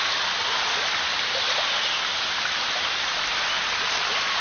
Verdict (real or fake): real